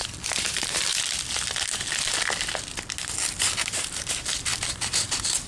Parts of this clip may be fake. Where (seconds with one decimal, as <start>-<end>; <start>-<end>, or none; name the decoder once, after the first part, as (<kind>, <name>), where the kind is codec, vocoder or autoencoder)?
0.0-0.9 (vocoder, BigVGAN v2); 3.6-5.5